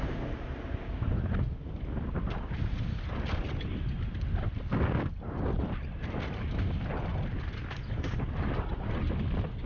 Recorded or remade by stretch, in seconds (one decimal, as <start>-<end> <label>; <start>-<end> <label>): 0.0-9.7 recorded